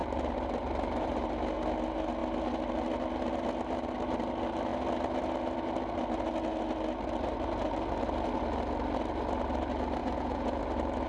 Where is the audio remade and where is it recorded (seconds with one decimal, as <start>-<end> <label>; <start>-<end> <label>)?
0.0-10.0 recorded; 10.0-10.6 remade; 10.6-11.1 recorded